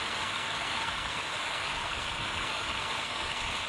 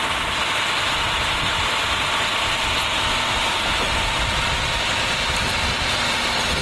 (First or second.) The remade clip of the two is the first